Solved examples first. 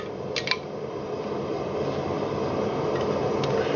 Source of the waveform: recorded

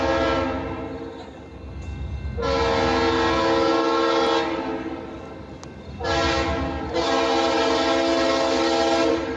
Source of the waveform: recorded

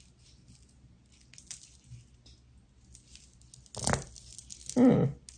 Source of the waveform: recorded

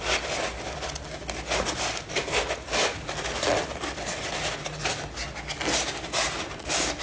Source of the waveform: recorded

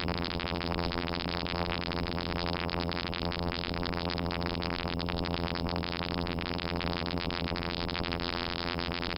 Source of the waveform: remade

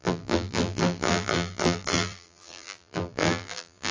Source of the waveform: remade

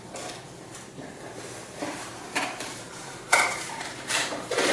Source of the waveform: remade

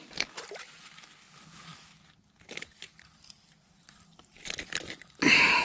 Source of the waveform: recorded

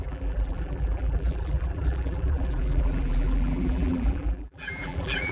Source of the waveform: remade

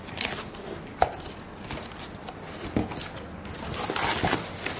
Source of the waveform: recorded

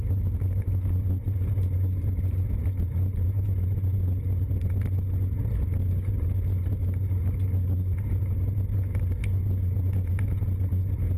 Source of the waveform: recorded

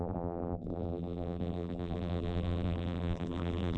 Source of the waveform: remade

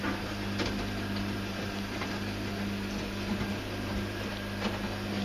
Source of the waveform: recorded